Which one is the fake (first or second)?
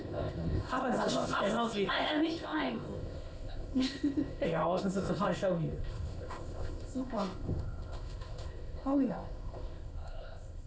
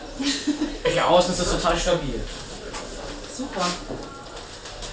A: first